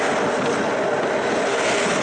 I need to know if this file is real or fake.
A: real